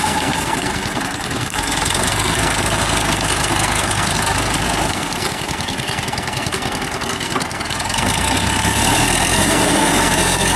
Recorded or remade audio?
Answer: remade